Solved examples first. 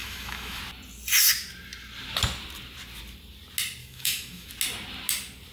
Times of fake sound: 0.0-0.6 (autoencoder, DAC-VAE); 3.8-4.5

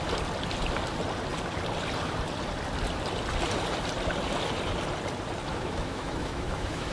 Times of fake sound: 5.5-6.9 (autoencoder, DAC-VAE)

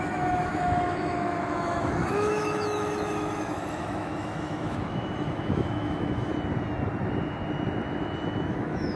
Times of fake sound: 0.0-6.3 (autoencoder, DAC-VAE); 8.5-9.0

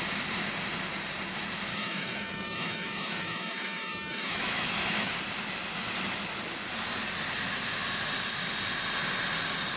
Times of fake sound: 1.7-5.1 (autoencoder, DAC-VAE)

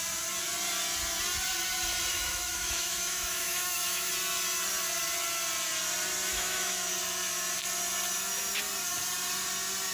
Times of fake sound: 2.1-4.1 (autoencoder, DAC-VAE); 6.3-6.9